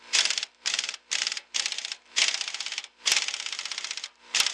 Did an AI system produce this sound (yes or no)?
no